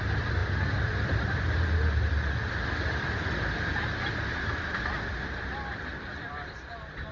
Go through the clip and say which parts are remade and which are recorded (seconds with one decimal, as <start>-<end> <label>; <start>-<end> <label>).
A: 0.0-7.1 recorded